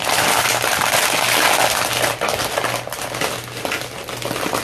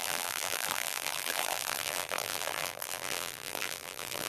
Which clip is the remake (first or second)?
second